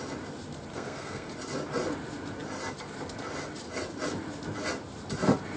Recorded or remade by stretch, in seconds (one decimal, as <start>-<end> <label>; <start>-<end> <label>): 0.0-0.7 recorded; 0.7-1.3 remade; 1.3-5.6 recorded